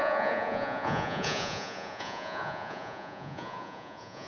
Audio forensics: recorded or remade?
remade